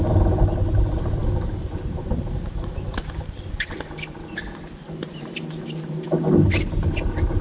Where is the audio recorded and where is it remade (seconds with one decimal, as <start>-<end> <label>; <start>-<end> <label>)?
0.0-7.4 recorded

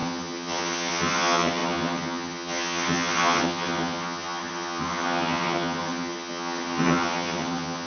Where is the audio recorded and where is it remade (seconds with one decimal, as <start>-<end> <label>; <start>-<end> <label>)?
0.0-7.9 remade